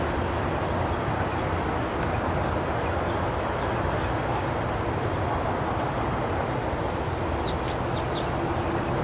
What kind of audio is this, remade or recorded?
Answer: recorded